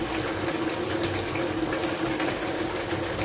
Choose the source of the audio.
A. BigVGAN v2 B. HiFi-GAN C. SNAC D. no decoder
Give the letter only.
D